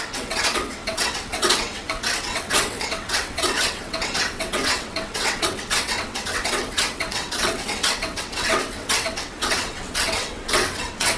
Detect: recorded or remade remade